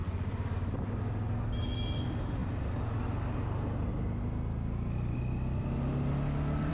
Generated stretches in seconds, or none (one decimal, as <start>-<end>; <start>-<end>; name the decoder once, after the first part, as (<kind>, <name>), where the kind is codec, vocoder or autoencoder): none